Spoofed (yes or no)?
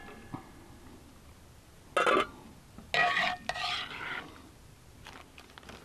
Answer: no